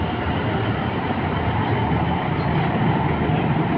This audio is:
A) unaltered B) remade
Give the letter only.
A